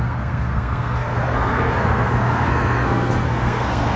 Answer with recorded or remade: remade